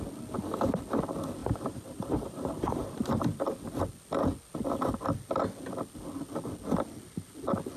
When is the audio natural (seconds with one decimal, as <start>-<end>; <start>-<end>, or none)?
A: 0.0-1.4; 3.4-7.8